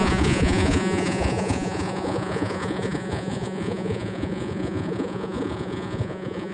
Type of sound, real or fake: fake